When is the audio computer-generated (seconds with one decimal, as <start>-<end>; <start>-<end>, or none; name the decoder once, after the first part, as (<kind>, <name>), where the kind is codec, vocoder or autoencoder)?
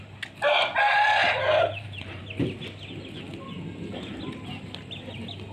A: 1.2-2.2 (vocoder, BigVGAN v2)